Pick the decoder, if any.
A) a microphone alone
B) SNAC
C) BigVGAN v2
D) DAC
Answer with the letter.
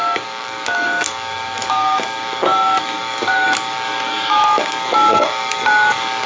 D